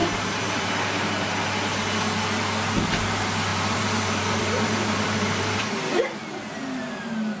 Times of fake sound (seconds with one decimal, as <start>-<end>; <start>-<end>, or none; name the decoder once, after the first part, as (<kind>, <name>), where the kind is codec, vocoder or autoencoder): 0.0-0.7 (vocoder, BigVGAN v2); 3.5-5.6